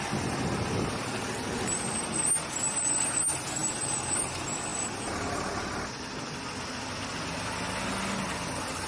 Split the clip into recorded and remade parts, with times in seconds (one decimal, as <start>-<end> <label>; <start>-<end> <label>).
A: 0.0-8.9 recorded

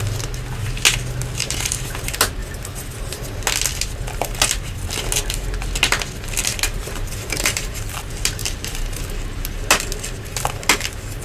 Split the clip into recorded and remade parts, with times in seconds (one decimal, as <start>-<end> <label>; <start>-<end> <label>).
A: 0.0-1.4 recorded; 1.4-2.0 remade; 2.0-6.5 recorded; 6.5-8.0 remade; 8.0-8.4 recorded; 8.4-9.0 remade; 9.0-11.2 recorded

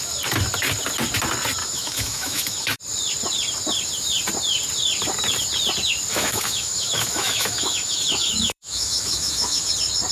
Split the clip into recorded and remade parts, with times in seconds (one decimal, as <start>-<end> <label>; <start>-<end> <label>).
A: 0.0-1.6 recorded; 1.6-2.8 remade; 2.8-6.1 recorded; 6.1-9.7 remade; 9.7-10.1 recorded

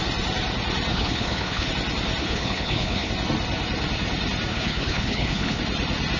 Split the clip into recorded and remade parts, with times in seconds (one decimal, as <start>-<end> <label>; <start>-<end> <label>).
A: 0.0-0.9 recorded; 0.9-1.7 remade; 1.7-2.2 recorded; 2.2-3.1 remade; 3.1-4.5 recorded; 4.5-5.6 remade; 5.6-6.2 recorded

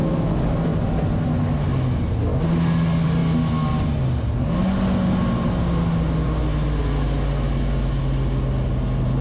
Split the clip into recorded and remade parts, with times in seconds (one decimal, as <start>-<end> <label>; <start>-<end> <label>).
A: 0.0-9.2 recorded

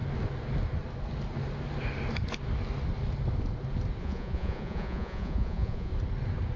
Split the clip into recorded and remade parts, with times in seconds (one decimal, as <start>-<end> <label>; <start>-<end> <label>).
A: 0.0-4.0 recorded; 4.0-5.9 remade; 5.9-6.6 recorded